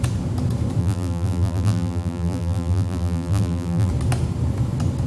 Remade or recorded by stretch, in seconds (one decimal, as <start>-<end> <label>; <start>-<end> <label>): 0.0-0.8 recorded; 0.8-3.9 remade; 3.9-5.1 recorded